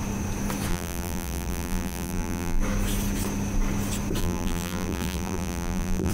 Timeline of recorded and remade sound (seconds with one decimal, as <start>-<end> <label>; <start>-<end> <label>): 0.0-0.7 recorded; 0.7-2.6 remade; 2.6-4.2 recorded; 4.2-6.1 remade